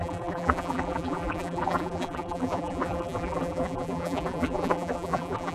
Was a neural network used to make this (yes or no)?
yes